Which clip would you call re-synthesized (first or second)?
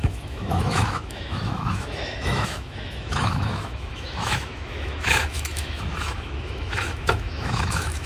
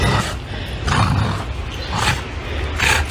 first